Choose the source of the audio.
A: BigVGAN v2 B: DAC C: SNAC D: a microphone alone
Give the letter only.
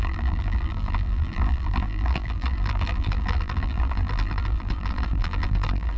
A